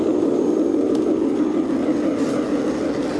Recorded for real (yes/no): yes